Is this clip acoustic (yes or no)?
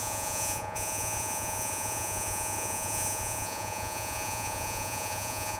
no